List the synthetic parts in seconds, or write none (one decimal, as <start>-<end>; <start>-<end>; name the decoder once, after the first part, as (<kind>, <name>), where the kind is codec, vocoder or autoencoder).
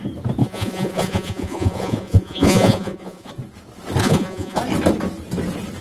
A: 0.4-3.3 (vocoder, Vocos); 4.0-4.6